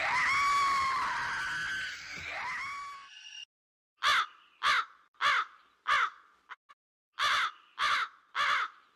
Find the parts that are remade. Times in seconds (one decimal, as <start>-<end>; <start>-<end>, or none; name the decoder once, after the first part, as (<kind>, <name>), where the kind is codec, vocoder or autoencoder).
none